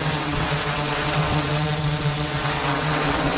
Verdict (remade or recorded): remade